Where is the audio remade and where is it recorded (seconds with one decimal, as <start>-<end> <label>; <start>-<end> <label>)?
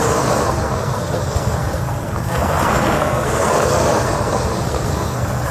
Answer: 0.0-5.5 remade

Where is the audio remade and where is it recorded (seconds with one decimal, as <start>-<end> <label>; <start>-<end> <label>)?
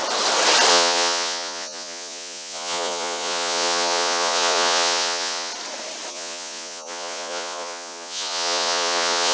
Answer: 0.0-0.7 recorded; 0.7-5.5 remade; 5.5-6.1 recorded; 6.1-9.3 remade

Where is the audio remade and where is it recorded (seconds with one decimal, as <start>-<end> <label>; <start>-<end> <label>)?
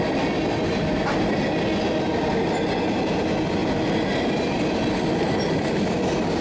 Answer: 0.0-6.4 recorded